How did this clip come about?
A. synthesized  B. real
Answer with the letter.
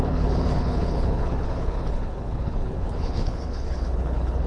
A